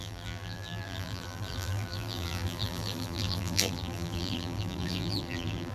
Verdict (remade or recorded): remade